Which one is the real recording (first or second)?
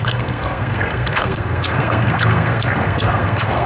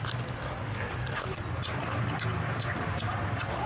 second